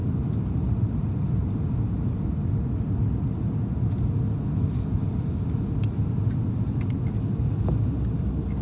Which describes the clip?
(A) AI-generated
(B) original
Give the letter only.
B